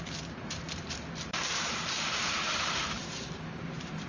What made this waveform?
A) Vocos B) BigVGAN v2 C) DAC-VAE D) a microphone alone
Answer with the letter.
B